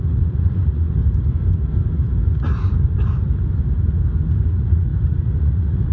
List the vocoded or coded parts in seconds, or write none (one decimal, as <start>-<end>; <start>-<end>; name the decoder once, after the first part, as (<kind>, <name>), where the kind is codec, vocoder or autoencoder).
0.0-1.0 (vocoder, Vocos); 4.5-4.9; 5.4-5.9